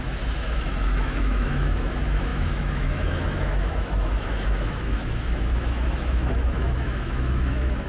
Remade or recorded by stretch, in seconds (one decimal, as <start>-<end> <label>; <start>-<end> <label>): 0.0-7.9 remade